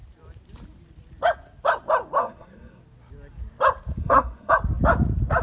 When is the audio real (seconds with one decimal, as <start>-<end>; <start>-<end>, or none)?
0.0-2.2; 2.8-4.0; 4.5-5.4